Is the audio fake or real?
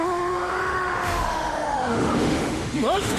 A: fake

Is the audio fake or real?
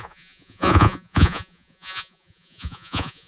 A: fake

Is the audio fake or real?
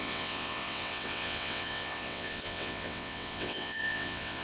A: fake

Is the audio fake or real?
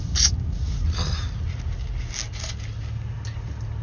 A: real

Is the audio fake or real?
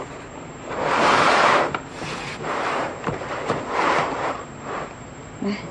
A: fake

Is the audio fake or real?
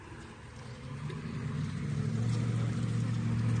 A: real